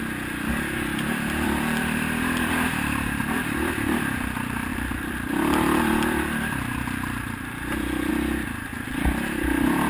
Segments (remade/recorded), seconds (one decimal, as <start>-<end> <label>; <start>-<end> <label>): 0.0-0.9 recorded; 0.9-4.0 remade; 4.0-4.7 recorded; 4.7-8.1 remade; 8.1-9.9 recorded